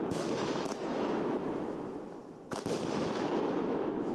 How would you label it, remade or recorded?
remade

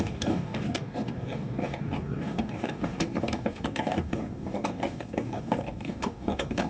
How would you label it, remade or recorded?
remade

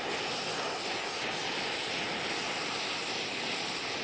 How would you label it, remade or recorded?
recorded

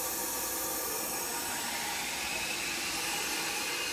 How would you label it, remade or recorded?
recorded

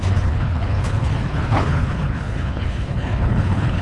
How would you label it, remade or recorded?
remade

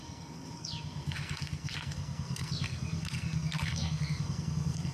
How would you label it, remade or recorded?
remade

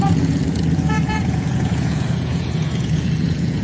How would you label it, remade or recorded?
remade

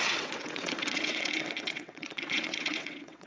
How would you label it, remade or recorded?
remade